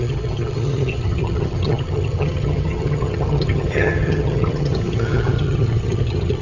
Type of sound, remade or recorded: remade